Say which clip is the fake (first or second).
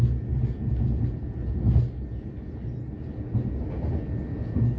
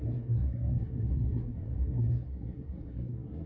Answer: second